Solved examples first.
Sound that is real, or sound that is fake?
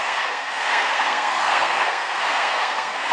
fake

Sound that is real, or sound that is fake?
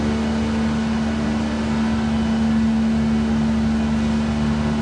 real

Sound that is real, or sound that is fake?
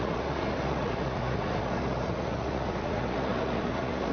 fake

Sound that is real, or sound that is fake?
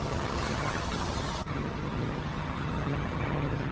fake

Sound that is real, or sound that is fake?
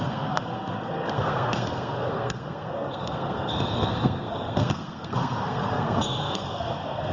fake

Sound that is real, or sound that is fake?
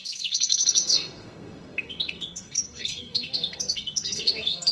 fake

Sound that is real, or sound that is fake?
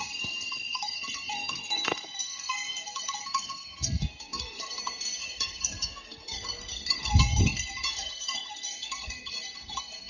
fake